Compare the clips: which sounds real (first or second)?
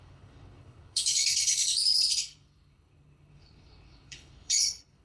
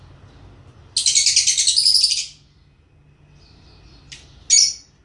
second